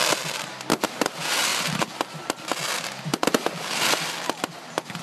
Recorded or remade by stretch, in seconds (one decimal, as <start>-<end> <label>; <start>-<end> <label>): 0.0-1.5 recorded; 1.5-2.6 remade; 2.6-3.1 recorded; 3.1-5.0 remade